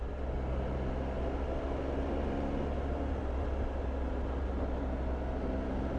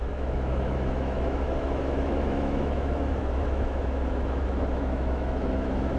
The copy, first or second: second